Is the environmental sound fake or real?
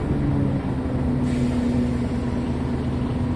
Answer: real